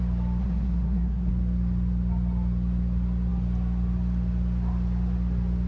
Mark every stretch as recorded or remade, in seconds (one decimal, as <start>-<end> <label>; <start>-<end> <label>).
0.0-0.4 recorded; 0.4-1.3 remade; 1.3-5.7 recorded